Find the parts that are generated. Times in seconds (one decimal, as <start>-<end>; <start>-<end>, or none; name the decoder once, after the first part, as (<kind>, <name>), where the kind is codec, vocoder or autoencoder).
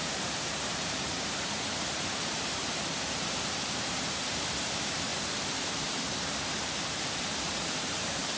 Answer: 0.0-8.4 (vocoder, BigVGAN v2)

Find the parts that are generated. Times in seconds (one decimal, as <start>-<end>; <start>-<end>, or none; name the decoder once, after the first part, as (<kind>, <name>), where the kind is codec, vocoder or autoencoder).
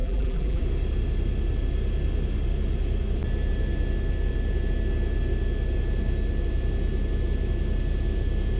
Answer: 0.0-0.6 (vocoder, BigVGAN v2)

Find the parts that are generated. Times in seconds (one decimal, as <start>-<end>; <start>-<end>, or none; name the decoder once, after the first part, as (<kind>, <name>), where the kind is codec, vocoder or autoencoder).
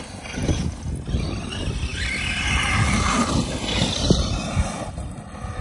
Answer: none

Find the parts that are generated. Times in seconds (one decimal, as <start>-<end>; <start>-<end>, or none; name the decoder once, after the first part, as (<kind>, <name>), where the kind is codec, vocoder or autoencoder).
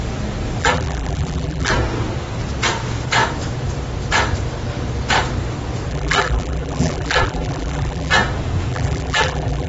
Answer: 0.6-1.7 (vocoder, BigVGAN v2); 5.9-8.1; 8.7-9.7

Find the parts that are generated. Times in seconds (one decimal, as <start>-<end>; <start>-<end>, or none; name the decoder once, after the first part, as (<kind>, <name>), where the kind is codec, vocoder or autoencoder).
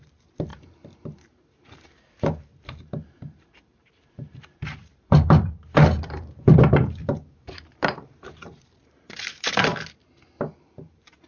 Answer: 0.0-9.7 (vocoder, BigVGAN v2); 10.6-11.3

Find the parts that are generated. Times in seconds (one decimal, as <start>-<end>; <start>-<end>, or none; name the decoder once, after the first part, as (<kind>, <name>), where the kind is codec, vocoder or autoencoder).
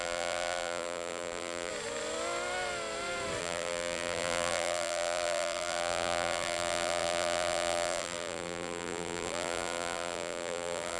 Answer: 0.0-1.7 (vocoder, BigVGAN v2); 3.4-11.0